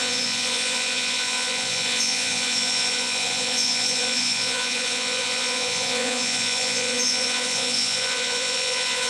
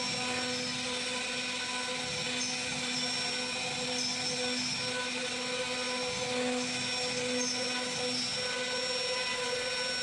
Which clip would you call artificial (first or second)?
first